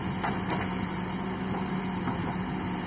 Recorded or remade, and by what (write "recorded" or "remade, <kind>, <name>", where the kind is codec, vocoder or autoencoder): recorded